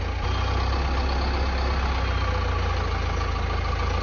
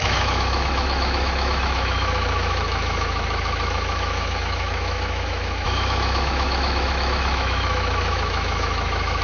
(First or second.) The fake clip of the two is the second